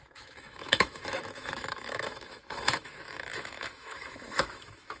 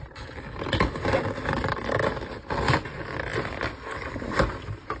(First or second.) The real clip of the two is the second